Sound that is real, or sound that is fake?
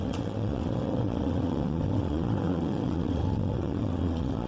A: fake